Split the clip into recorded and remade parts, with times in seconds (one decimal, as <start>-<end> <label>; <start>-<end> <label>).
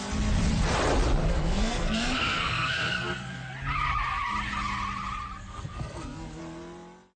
0.0-1.2 recorded; 1.2-3.5 remade; 3.5-5.4 recorded; 5.4-6.4 remade; 6.4-7.2 recorded